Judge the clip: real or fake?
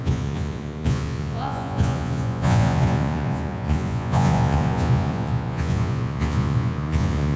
fake